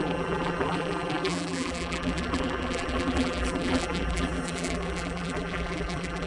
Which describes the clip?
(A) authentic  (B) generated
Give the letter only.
B